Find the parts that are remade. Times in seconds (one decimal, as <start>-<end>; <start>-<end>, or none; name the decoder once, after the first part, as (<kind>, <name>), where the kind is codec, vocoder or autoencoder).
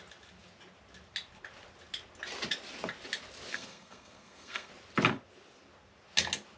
3.5-4.7 (codec, SNAC)